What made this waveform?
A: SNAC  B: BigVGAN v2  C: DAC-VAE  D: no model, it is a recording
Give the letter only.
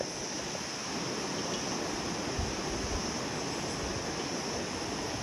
D